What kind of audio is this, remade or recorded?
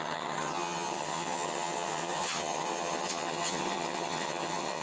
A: remade